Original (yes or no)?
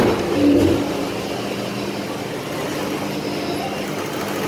yes